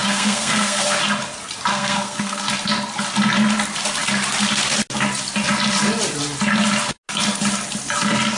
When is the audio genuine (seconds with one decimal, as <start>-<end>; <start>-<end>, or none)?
1.0-1.7; 2.5-8.4